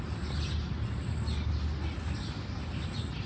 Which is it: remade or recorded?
recorded